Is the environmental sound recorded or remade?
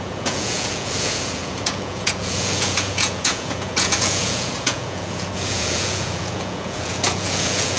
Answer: remade